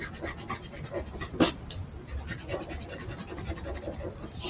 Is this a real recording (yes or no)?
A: yes